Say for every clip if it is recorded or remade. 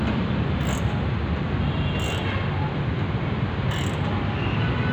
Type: recorded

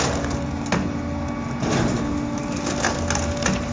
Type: recorded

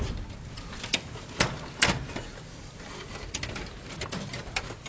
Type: recorded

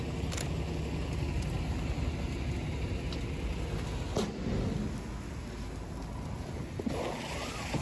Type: recorded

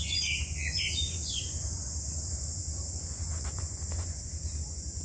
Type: remade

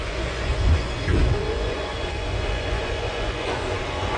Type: remade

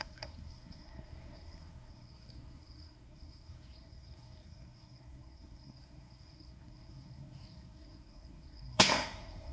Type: remade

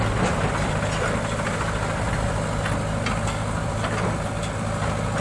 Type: recorded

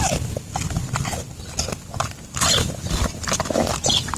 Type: recorded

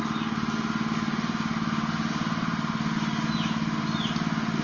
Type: recorded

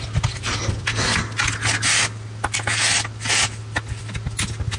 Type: recorded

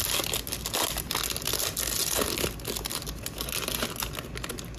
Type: recorded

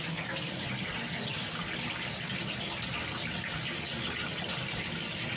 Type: recorded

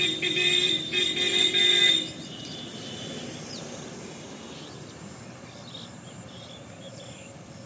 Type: remade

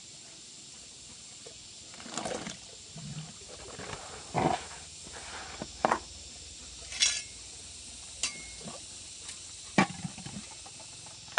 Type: recorded